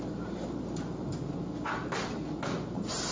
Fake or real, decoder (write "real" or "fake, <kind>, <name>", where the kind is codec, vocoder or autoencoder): real